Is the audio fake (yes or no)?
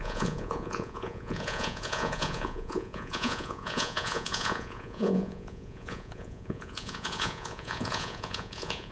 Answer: yes